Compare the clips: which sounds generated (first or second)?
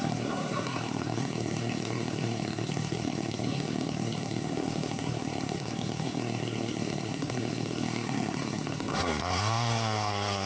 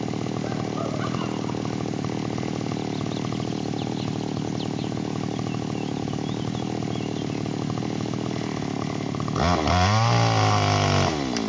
first